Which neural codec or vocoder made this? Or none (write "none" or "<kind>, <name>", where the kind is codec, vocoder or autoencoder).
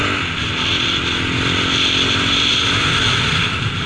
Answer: none